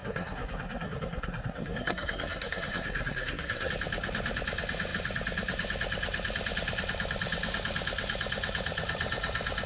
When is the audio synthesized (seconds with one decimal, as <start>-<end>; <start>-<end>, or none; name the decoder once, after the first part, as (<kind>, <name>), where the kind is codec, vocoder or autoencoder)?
0.0-3.7 (codec, SNAC)